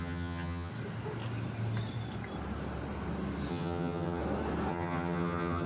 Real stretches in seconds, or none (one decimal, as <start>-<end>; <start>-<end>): 0.7-3.5; 4.2-4.7